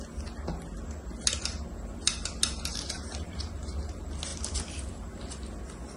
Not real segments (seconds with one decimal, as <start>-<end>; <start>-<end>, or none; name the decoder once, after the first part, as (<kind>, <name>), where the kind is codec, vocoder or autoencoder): 2.7-3.4 (vocoder, BigVGAN v2)